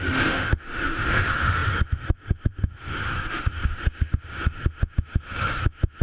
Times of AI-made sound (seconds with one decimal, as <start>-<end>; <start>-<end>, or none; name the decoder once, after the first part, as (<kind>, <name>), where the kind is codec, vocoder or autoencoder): 0.0-6.0 (autoencoder, DAC-VAE)